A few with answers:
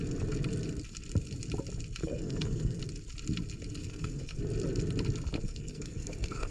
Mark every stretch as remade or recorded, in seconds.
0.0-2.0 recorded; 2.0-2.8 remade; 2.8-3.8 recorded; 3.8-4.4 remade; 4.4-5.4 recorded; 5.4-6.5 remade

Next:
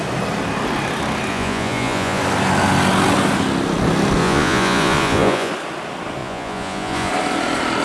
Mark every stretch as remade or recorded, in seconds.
0.0-1.3 recorded; 1.3-2.2 remade; 2.2-4.2 recorded; 4.2-5.5 remade; 5.5-6.2 recorded; 6.2-7.1 remade; 7.1-7.8 recorded